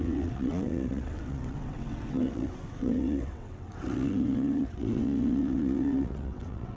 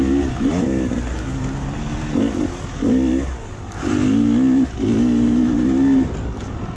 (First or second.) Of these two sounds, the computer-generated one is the first